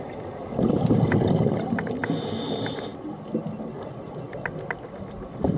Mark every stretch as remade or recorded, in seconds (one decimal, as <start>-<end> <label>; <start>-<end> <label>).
0.0-5.6 recorded